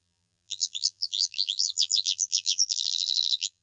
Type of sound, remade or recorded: remade